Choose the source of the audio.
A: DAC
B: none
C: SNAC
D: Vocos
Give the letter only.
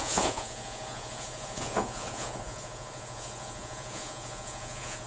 D